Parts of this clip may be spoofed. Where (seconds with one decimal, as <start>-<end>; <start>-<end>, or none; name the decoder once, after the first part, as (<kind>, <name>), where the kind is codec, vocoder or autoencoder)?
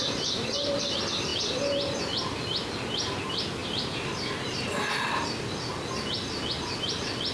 3.6-5.7 (vocoder, BigVGAN v2)